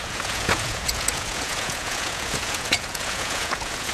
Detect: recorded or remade remade